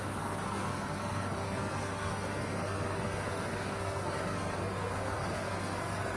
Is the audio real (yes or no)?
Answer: no